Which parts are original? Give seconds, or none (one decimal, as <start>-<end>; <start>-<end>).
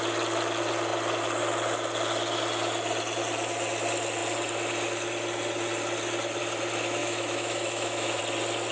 0.0-7.0; 8.2-8.7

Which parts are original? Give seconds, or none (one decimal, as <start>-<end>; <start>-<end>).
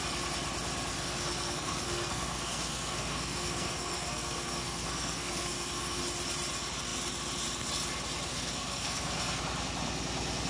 0.0-0.9; 6.0-8.3; 9.4-10.5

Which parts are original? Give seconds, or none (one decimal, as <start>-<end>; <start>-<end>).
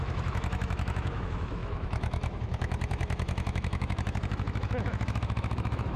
none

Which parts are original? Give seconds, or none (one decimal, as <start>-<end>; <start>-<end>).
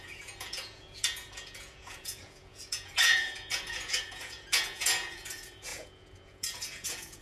none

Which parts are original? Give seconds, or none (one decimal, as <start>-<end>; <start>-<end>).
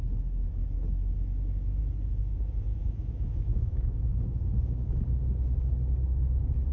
0.0-2.7; 5.0-6.7